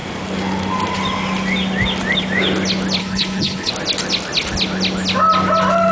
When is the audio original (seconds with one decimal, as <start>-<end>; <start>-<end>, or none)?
0.0-3.0; 3.7-5.9